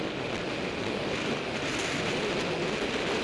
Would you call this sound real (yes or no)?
yes